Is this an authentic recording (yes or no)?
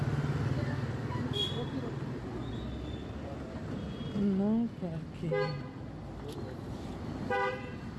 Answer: yes